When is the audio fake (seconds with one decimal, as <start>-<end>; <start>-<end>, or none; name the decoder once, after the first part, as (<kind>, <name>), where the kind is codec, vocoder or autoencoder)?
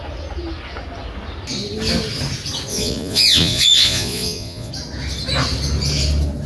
2.7-4.7 (vocoder, Vocos)